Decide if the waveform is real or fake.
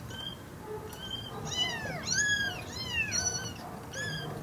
real